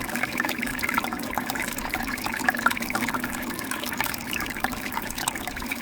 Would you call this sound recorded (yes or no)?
no